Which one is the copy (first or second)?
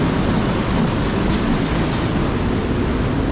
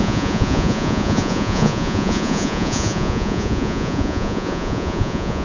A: second